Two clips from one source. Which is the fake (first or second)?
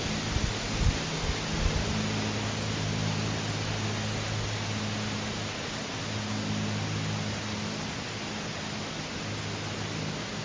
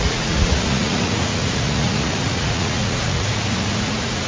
second